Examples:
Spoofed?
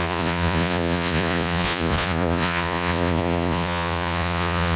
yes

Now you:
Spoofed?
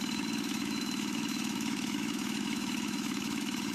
yes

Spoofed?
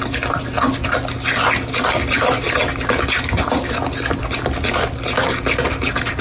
no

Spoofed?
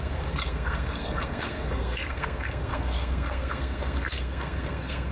yes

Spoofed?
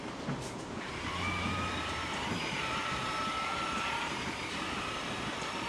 yes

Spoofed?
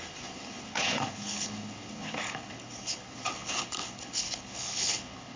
yes